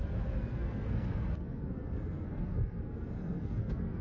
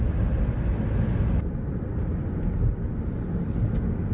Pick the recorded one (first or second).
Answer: second